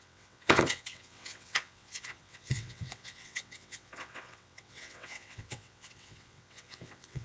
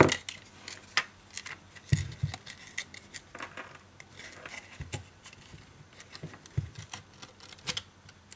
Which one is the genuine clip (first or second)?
second